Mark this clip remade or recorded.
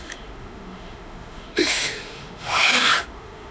remade